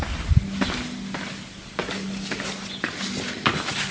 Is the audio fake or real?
real